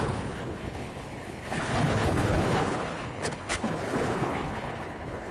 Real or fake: fake